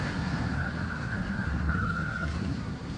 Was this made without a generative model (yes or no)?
no